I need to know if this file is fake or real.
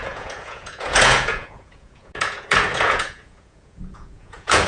fake